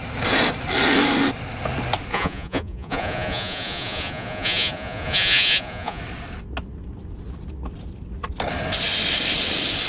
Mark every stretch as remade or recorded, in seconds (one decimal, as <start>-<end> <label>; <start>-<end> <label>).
0.0-2.1 recorded; 2.1-6.0 remade; 6.0-9.9 recorded